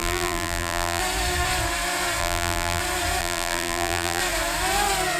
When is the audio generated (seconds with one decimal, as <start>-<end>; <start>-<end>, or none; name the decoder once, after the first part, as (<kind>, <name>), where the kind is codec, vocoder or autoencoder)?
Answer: 0.0-1.0 (vocoder, BigVGAN v2); 2.2-2.8; 3.2-4.2